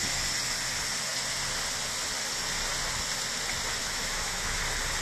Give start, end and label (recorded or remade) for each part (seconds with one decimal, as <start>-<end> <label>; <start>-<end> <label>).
0.0-3.8 recorded; 3.8-4.6 remade; 4.6-5.0 recorded